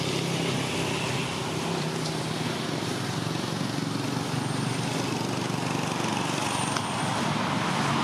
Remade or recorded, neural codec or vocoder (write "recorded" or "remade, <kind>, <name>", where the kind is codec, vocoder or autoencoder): recorded